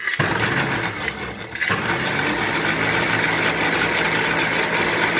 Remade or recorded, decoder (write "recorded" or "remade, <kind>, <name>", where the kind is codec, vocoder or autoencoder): recorded